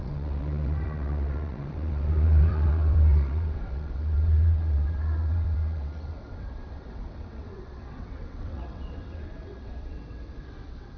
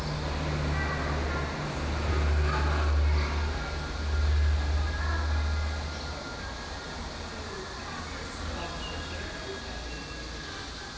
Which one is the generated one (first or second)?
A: first